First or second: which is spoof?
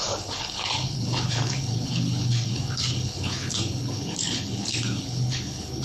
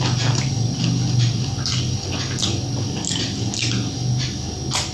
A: first